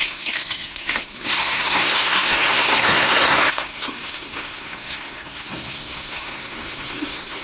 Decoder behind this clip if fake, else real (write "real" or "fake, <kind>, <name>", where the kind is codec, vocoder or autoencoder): fake, codec, SNAC